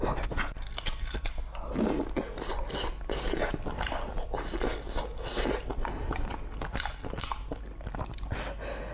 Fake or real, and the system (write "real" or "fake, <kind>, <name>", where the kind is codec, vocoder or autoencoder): real